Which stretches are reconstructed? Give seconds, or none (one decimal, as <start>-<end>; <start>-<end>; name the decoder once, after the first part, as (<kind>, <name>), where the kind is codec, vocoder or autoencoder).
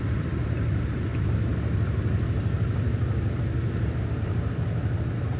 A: none